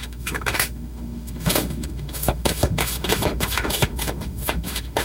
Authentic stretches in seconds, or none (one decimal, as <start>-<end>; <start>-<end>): none